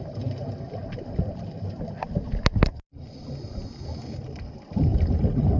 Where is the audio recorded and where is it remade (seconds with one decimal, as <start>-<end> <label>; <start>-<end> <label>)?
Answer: 0.0-0.8 recorded; 0.8-3.0 remade; 3.0-5.6 recorded